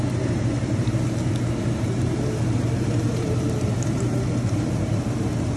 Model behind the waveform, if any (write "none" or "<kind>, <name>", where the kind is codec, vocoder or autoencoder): vocoder, BigVGAN v2